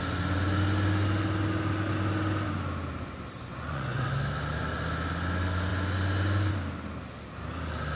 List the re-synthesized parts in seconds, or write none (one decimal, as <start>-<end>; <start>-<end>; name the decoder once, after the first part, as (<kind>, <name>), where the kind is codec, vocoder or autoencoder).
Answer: 3.4-4.1 (vocoder, Vocos)